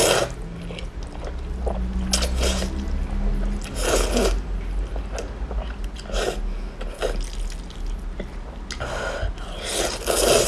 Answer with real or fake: real